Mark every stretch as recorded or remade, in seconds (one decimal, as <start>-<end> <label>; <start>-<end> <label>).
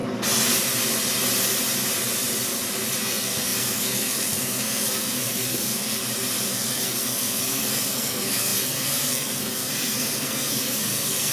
0.0-3.0 recorded; 3.0-6.0 remade; 6.0-6.5 recorded; 6.5-11.3 remade